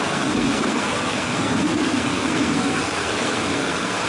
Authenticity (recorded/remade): remade